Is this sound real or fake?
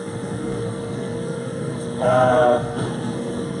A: fake